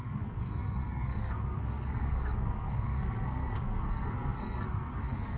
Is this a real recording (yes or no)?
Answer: no